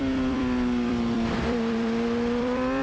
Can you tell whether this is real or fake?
fake